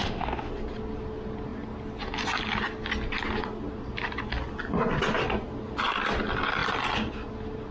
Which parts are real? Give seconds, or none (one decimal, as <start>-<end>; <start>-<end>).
0.5-7.7